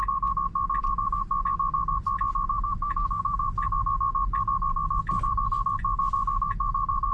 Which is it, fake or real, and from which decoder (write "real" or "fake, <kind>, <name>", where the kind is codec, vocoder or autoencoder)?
real